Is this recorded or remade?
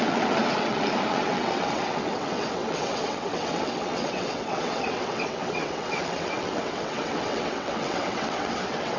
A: remade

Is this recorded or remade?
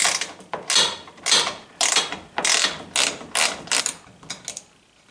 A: recorded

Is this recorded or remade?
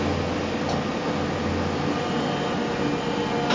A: recorded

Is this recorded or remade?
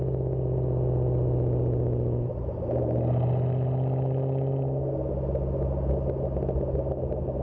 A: recorded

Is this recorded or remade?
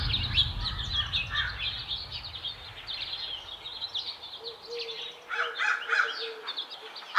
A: recorded